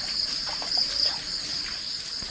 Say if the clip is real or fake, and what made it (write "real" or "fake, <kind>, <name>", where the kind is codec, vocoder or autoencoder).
real